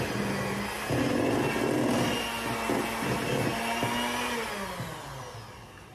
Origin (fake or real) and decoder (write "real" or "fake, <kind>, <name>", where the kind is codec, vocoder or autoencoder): real